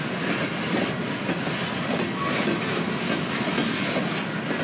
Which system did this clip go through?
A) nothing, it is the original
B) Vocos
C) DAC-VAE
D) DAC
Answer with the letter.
A